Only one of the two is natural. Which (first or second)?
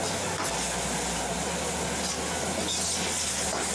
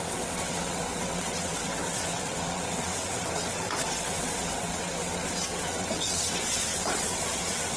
first